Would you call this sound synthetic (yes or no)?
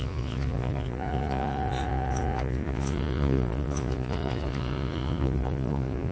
yes